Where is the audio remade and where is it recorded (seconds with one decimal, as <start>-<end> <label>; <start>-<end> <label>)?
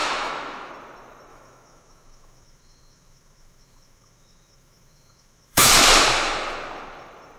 0.0-0.7 remade; 0.7-1.3 recorded; 1.3-5.7 remade; 5.7-7.4 recorded